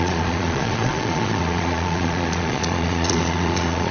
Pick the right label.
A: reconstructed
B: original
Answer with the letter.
A